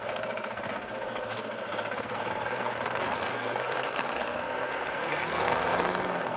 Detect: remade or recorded remade